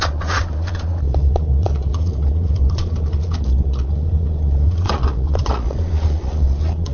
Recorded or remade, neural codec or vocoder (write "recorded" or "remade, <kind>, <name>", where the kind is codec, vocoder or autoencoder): remade, vocoder, Vocos